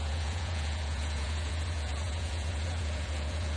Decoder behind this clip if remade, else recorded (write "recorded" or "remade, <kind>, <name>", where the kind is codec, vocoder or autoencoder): remade, vocoder, Vocos